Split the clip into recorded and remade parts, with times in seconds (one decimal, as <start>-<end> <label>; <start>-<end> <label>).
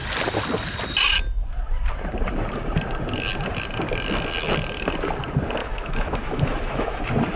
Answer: 0.0-5.6 recorded; 5.6-7.0 remade; 7.0-7.4 recorded